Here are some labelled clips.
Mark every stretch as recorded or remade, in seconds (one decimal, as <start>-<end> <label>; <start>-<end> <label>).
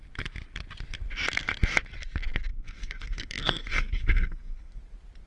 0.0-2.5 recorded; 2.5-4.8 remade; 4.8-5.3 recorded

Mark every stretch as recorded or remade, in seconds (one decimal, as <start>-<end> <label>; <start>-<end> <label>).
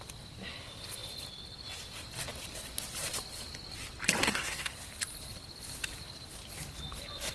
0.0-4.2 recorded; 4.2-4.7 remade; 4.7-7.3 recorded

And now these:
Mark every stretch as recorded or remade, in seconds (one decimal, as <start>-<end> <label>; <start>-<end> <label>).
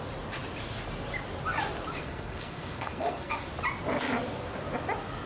0.0-2.0 recorded; 2.0-3.5 remade; 3.5-5.3 recorded